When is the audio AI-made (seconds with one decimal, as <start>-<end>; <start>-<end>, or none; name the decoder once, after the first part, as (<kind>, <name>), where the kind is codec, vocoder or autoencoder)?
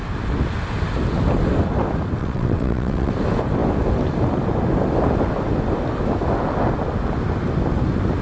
2.2-3.1 (vocoder, WaveNeXt)